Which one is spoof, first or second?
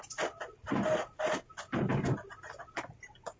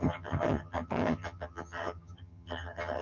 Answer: second